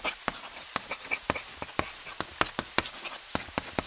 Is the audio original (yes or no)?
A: yes